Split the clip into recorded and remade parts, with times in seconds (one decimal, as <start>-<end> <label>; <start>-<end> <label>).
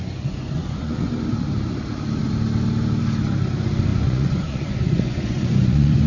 0.0-1.1 remade; 1.1-3.9 recorded; 3.9-6.1 remade